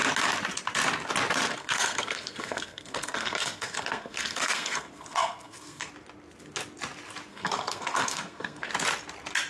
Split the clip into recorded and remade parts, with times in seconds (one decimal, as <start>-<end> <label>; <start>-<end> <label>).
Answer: 0.0-1.6 recorded; 1.6-5.9 remade; 5.9-7.3 recorded; 7.3-8.7 remade; 8.7-9.5 recorded

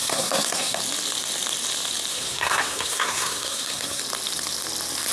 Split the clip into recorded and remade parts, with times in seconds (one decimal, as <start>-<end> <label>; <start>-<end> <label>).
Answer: 0.0-0.8 remade; 0.8-2.1 recorded; 2.1-4.0 remade; 4.0-5.1 recorded

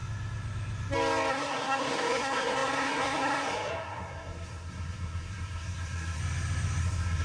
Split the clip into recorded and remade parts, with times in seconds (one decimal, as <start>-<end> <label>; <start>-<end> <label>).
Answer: 0.0-1.3 recorded; 1.3-6.2 remade; 6.2-6.8 recorded; 6.8-7.2 remade

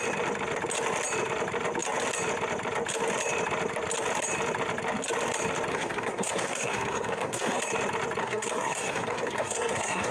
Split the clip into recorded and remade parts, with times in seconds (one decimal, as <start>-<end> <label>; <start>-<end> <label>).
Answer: 0.0-5.7 recorded; 5.7-7.6 remade; 7.6-8.2 recorded; 8.2-10.1 remade

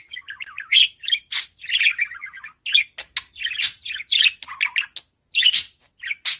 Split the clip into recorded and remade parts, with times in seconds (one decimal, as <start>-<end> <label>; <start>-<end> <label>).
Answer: 0.0-6.4 recorded

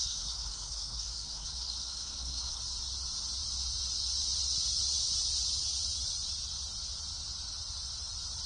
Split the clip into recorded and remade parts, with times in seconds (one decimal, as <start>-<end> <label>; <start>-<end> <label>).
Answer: 0.0-2.6 remade; 2.6-8.5 recorded

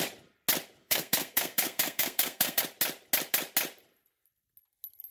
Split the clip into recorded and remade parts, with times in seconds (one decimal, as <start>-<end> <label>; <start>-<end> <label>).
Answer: 0.0-0.8 recorded; 0.8-2.6 remade; 2.6-5.1 recorded

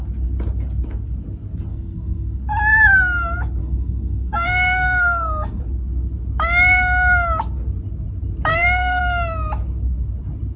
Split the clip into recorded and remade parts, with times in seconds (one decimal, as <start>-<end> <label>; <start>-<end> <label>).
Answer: 0.0-1.7 recorded; 1.7-2.4 remade; 2.4-3.6 recorded; 3.6-5.6 remade; 5.6-8.5 recorded; 8.5-9.0 remade; 9.0-10.6 recorded